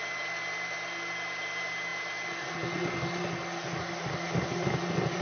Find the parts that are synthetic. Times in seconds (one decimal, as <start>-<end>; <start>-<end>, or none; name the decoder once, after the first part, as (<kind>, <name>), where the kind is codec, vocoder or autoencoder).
none